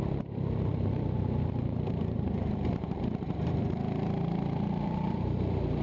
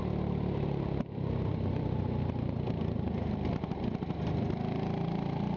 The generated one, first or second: first